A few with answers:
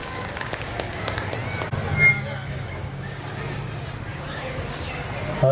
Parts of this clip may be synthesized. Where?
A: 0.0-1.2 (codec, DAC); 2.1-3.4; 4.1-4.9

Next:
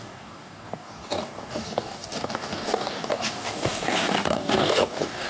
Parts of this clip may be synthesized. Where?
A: 0.0-5.3 (codec, DAC)

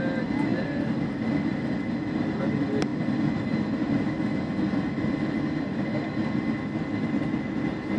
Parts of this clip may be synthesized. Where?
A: none

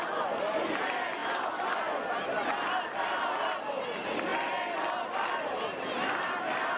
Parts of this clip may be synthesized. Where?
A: none

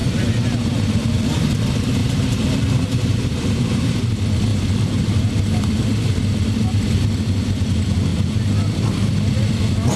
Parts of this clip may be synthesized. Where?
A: 0.0-1.5 (vocoder, BigVGAN v2); 2.0-4.0; 4.5-6.2; 8.1-8.8

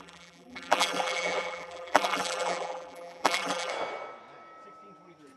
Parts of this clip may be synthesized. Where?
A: 0.0-3.7 (vocoder, BigVGAN v2)

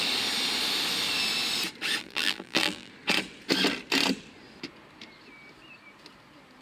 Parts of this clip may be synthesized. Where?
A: 2.0-2.9 (vocoder, BigVGAN v2)